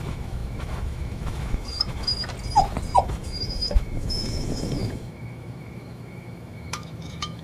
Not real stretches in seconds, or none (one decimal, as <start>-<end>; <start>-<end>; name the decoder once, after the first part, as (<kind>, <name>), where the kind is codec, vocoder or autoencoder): 0.0-2.1 (autoencoder, DAC-VAE); 3.0-7.4